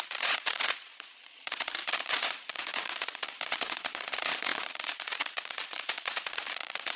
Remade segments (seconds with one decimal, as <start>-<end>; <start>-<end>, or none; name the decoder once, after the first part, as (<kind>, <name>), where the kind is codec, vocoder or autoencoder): 0.0-7.0 (vocoder, Vocos)

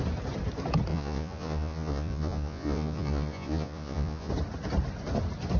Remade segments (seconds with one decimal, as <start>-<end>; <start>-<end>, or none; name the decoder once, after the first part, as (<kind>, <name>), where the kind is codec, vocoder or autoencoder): 0.9-4.3 (vocoder, Vocos)